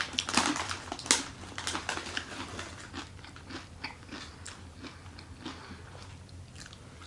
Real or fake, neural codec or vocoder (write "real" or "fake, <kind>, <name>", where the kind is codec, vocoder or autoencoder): real